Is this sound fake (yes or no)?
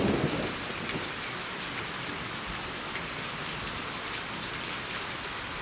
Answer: no